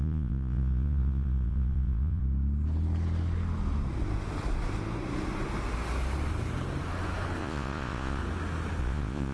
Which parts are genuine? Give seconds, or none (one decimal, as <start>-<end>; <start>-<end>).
2.2-7.4; 8.2-8.8